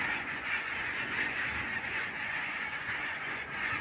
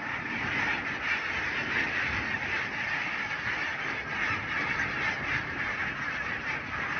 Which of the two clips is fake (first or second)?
first